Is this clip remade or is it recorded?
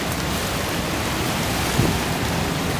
recorded